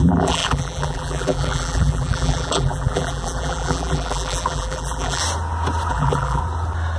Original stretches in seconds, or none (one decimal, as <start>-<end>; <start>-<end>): 5.2-5.9; 6.4-7.0